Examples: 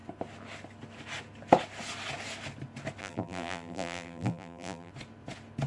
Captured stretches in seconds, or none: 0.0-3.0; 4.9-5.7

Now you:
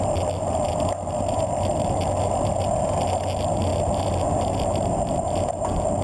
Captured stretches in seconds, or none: 0.0-3.7; 4.7-6.0

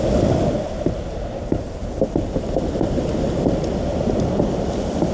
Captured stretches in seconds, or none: 0.0-1.8

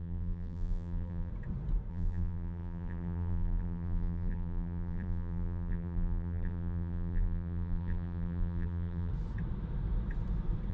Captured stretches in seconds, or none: 1.3-1.9; 9.1-10.7

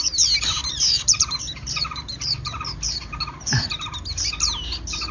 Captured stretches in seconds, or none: 0.0-0.6; 3.7-5.1

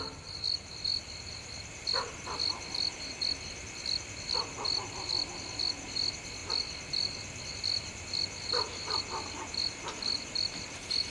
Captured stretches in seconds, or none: 0.0-11.1

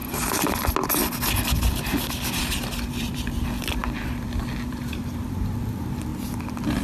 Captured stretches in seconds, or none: 0.0-1.7; 6.1-6.8

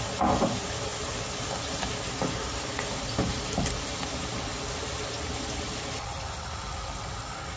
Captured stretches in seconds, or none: 0.0-7.6